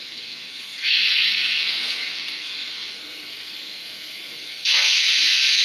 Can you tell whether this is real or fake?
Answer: fake